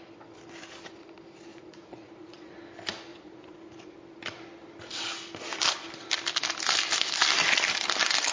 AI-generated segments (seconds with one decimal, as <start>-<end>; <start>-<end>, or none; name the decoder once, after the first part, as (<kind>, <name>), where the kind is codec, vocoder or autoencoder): 1.5-2.6 (vocoder, Vocos); 3.1-3.9